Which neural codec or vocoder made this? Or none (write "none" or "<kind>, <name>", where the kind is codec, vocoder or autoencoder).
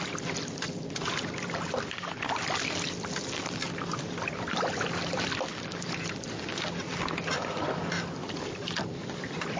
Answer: vocoder, BigVGAN v2